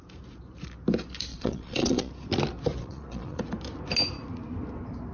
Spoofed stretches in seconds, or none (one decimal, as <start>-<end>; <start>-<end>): 1.3-2.1; 2.8-3.4